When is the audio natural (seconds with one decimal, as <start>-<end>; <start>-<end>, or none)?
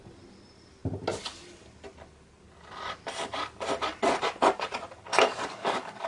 0.0-5.1